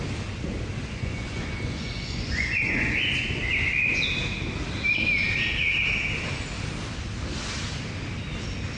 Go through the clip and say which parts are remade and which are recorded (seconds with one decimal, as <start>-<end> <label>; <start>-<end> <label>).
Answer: 0.0-0.8 recorded; 0.8-3.4 remade; 3.4-8.8 recorded